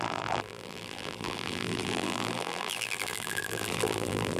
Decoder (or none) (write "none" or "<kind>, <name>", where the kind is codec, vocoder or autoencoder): vocoder, BigVGAN v2